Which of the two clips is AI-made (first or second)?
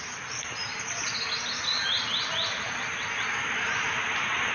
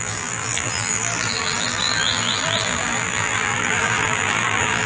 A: second